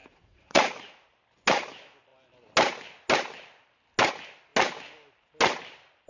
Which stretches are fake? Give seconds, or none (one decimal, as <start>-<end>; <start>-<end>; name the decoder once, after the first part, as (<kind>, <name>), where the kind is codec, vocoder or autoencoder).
0.0-0.9 (vocoder, Vocos)